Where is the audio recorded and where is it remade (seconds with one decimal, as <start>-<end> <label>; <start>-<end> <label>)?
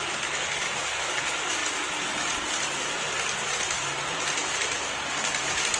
0.0-5.8 recorded